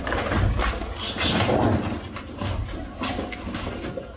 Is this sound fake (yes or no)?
no